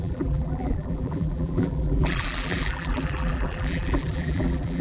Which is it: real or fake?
fake